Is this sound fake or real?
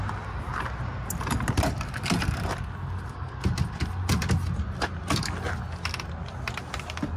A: real